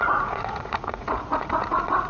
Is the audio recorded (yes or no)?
no